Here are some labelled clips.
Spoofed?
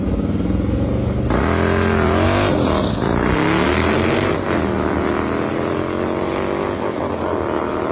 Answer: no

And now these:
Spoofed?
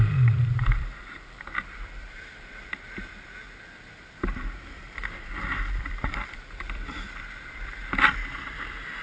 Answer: yes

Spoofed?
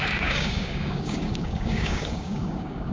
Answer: yes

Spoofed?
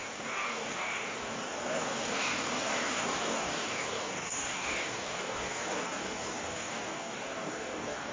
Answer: yes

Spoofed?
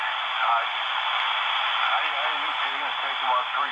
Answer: no